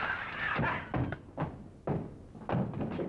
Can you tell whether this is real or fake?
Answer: real